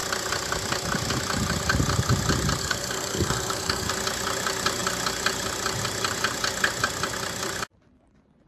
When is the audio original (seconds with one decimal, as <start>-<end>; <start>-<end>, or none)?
0.0-2.6; 3.9-8.5